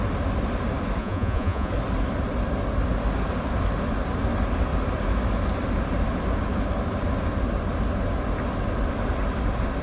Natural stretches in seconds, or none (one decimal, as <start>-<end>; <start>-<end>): 0.0-1.0; 1.7-9.8